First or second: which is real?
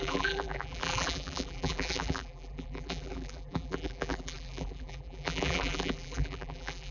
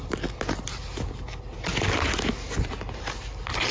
second